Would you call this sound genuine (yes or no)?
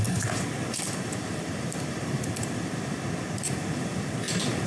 yes